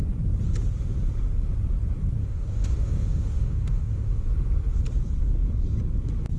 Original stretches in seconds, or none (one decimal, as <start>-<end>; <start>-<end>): 0.0-2.2; 4.3-6.4